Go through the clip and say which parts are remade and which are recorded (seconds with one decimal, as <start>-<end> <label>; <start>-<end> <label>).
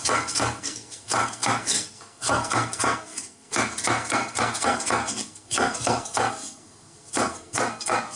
0.0-8.2 remade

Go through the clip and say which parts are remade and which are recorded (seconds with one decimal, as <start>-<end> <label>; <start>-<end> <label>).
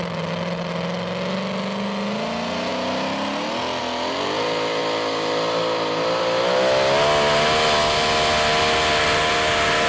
0.0-9.9 recorded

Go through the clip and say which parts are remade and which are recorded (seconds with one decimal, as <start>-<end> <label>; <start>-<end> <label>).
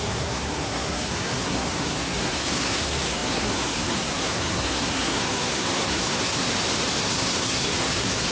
0.0-6.5 remade; 6.5-7.0 recorded; 7.0-8.3 remade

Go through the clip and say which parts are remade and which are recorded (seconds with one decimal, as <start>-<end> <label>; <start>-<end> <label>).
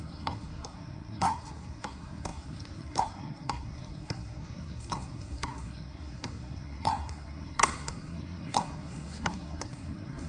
0.0-10.3 remade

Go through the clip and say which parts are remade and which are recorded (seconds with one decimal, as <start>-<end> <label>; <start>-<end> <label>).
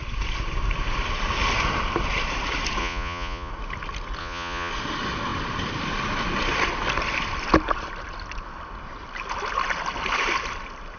0.0-2.8 recorded; 2.8-3.5 remade; 3.5-4.2 recorded; 4.2-4.7 remade; 4.7-11.0 recorded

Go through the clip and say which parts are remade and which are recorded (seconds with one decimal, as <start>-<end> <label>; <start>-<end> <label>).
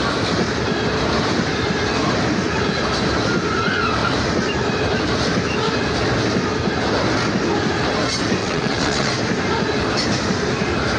0.0-8.4 recorded; 8.4-9.1 remade; 9.1-11.0 recorded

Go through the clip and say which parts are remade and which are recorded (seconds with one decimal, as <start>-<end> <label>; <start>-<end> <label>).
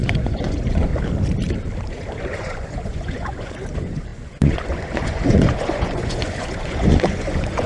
0.0-0.9 remade; 0.9-1.9 recorded; 1.9-7.7 remade